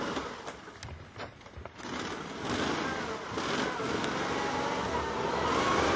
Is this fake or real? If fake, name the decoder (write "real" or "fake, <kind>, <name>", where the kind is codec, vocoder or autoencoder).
real